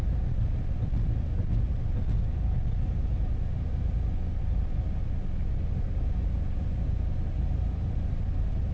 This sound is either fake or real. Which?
real